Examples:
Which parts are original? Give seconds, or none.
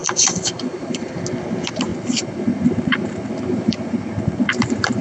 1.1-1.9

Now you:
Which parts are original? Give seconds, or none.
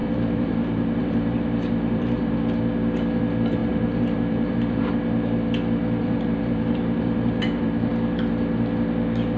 2.4-3.6; 4.9-6.0; 7.9-9.4